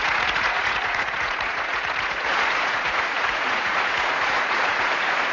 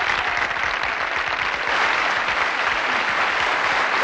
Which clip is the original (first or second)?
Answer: second